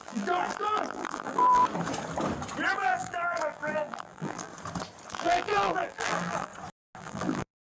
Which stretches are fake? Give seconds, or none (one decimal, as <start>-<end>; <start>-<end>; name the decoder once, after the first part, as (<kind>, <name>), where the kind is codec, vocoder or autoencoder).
0.0-1.6 (vocoder, BigVGAN v2); 2.7-4.5; 5.1-6.5; 7.0-7.6